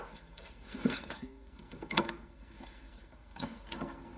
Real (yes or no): no